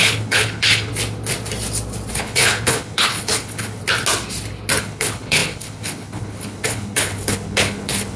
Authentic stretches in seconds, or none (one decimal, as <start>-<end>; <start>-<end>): 0.9-2.1; 3.8-4.8